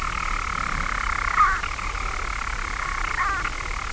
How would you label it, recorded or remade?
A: recorded